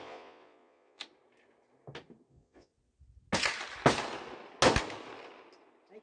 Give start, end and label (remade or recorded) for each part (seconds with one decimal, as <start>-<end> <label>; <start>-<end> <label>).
0.0-1.0 remade; 1.0-2.3 recorded; 2.3-2.7 remade; 2.7-6.0 recorded